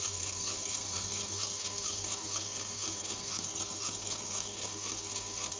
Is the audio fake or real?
fake